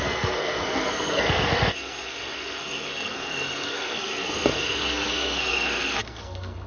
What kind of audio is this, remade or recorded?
remade